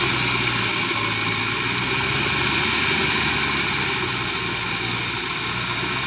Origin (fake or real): real